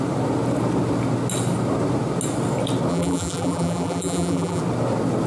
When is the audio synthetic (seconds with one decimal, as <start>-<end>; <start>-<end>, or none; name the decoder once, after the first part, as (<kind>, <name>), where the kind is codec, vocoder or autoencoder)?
2.9-4.6 (vocoder, BigVGAN v2)